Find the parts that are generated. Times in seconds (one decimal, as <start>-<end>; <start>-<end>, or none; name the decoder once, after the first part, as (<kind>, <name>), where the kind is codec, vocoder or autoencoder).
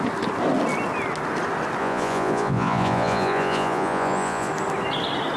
1.8-4.5 (vocoder, Vocos)